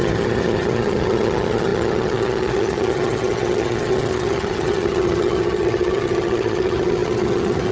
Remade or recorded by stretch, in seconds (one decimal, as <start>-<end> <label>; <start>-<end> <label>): 0.0-7.7 remade